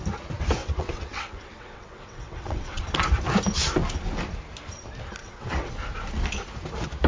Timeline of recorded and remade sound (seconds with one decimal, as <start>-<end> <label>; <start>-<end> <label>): 0.0-0.6 recorded; 0.6-2.8 remade; 2.8-5.2 recorded; 5.2-5.7 remade; 5.7-7.1 recorded